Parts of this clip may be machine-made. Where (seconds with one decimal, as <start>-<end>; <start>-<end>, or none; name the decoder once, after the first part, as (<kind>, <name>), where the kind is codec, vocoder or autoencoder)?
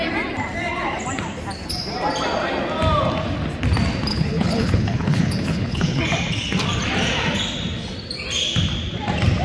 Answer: 4.1-6.0 (codec, HILCodec)